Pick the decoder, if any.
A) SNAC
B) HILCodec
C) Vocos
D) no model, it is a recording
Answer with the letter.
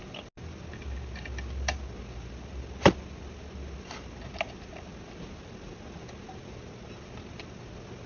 D